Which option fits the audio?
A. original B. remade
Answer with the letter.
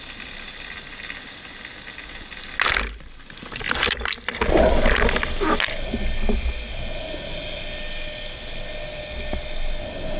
A